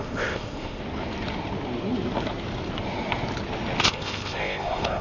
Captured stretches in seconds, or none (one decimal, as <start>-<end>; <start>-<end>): 0.8-3.8